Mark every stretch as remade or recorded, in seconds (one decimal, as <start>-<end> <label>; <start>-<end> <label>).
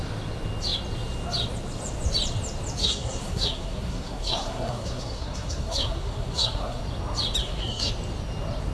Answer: 0.0-2.8 recorded; 2.8-6.8 remade; 6.8-7.4 recorded; 7.4-7.9 remade; 7.9-8.7 recorded